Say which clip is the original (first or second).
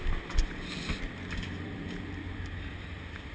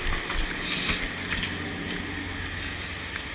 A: second